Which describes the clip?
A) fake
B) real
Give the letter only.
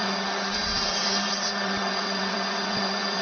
A